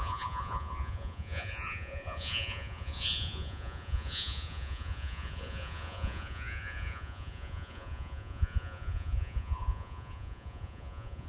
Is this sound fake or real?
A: fake